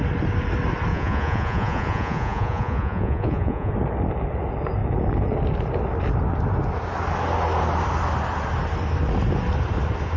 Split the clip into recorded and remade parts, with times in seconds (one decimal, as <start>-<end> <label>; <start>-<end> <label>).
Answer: 0.0-0.9 recorded; 0.9-3.7 remade; 3.7-10.2 recorded